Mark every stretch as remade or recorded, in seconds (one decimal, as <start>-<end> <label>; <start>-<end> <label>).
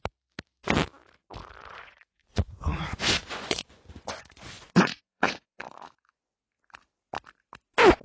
0.0-1.6 recorded; 1.6-6.4 remade; 6.4-8.0 recorded